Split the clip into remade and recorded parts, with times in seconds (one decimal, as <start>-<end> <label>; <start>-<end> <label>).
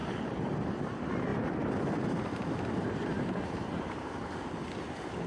0.0-0.6 remade; 0.6-1.3 recorded; 1.3-4.5 remade; 4.5-5.3 recorded